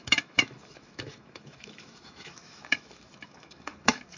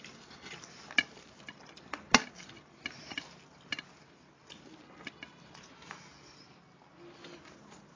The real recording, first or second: second